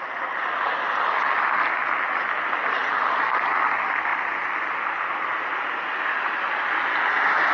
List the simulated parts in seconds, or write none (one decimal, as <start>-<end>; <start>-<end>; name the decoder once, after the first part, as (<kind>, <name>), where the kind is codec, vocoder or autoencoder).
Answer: none